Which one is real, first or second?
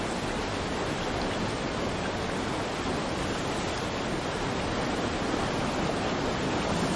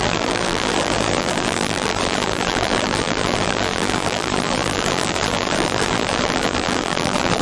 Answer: first